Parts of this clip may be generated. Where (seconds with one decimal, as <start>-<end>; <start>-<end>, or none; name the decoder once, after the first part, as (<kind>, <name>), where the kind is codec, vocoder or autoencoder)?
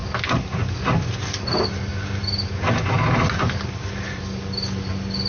none